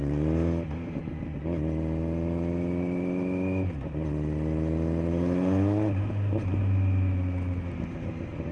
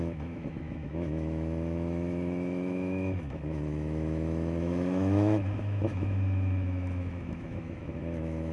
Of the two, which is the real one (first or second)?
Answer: first